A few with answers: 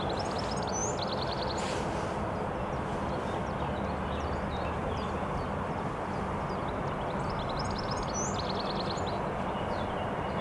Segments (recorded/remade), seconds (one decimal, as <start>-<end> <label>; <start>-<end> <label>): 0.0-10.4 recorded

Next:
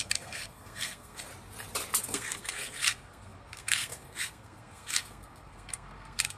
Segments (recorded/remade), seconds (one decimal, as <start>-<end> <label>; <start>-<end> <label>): 0.0-1.3 remade; 1.3-2.0 recorded; 2.0-6.4 remade

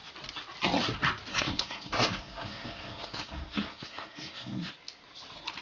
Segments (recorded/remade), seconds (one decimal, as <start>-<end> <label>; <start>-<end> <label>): 0.0-1.3 recorded; 1.3-4.7 remade; 4.7-5.6 recorded

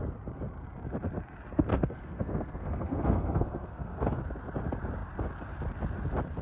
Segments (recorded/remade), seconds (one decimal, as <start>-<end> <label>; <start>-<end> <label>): 0.0-1.7 recorded; 1.7-4.2 remade; 4.2-6.4 recorded

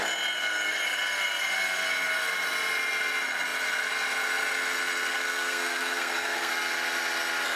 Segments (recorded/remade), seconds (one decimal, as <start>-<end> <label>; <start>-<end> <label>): 0.0-5.1 recorded; 5.1-6.5 remade; 6.5-7.6 recorded